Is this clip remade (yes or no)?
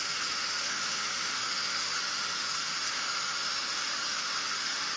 yes